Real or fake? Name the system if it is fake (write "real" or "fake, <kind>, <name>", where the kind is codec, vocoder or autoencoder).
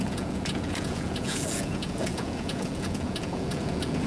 fake, vocoder, Vocos